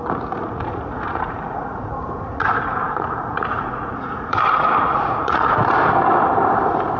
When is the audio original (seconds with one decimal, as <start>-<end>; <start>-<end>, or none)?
0.0-0.4; 1.9-2.3; 5.5-7.0